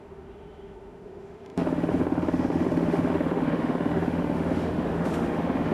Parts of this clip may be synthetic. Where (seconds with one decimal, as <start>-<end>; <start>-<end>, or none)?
0.0-5.7